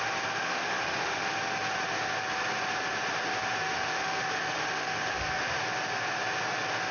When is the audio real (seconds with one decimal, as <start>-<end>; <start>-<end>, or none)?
0.0-0.4; 1.2-3.6; 5.6-6.9

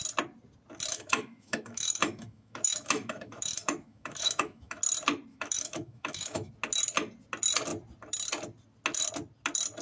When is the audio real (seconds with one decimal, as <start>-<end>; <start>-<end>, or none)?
0.0-0.9; 4.8-5.3; 6.5-9.8

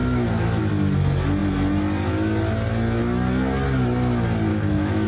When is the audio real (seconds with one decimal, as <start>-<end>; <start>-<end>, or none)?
0.6-4.5

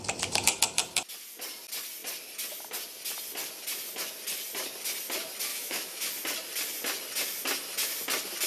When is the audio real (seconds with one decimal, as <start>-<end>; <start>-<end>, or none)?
0.0-5.5; 6.1-8.5

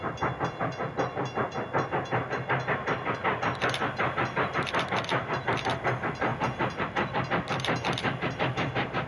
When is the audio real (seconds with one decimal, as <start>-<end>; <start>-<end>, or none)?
0.0-9.1

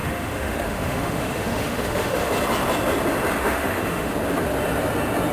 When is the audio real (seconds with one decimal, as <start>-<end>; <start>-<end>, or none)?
2.3-3.4; 4.1-5.3

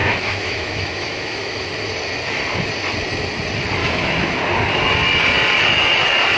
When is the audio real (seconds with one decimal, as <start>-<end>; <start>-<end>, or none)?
1.6-3.8; 4.4-6.4

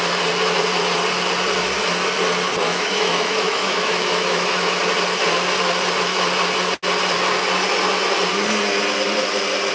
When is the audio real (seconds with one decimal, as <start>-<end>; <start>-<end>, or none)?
0.0-2.7; 4.8-9.7